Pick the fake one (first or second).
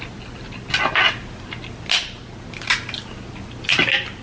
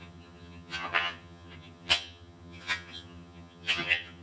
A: second